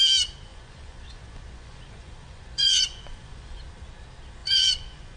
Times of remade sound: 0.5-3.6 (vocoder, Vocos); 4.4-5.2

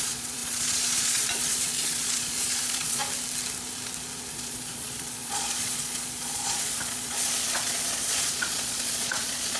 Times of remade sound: 0.0-3.0 (vocoder, Vocos); 4.3-9.6

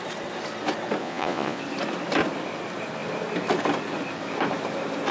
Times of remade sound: 1.0-1.6 (vocoder, Vocos)

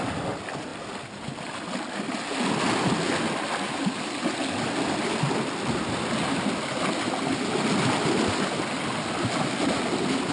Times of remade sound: none

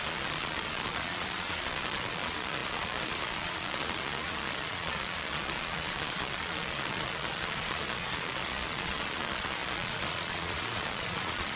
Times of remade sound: 0.0-11.6 (vocoder, Vocos)

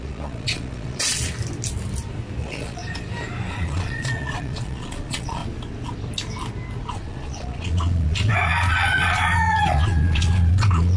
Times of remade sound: 0.0-1.3 (vocoder, Vocos); 2.4-2.8; 3.5-5.4; 6.8-11.0

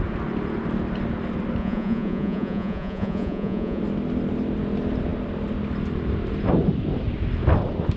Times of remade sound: 1.6-3.8 (vocoder, Vocos)

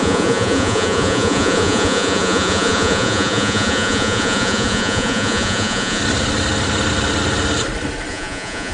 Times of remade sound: 0.0-6.0 (vocoder, Vocos); 8.1-8.7